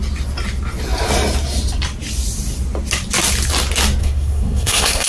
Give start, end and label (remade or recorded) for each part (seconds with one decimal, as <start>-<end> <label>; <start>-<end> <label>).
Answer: 0.0-4.0 recorded; 4.0-5.1 remade